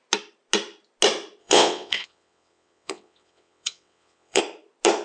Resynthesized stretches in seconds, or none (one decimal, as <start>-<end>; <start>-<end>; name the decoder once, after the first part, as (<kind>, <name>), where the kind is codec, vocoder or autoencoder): 1.4-4.4 (vocoder, WaveNeXt)